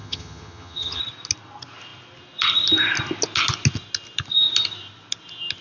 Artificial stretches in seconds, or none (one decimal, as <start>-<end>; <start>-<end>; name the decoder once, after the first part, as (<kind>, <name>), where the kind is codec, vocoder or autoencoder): 0.0-1.0 (vocoder, HiFi-GAN)